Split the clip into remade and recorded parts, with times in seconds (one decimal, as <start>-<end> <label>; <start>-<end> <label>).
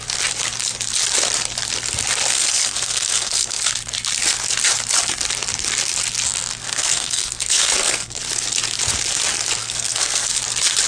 0.0-2.3 recorded; 2.3-3.6 remade; 3.6-6.6 recorded; 6.6-8.2 remade; 8.2-9.6 recorded; 9.6-10.3 remade; 10.3-10.9 recorded